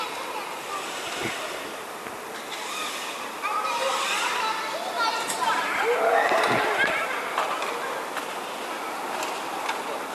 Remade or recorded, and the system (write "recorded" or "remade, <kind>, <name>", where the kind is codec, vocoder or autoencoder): recorded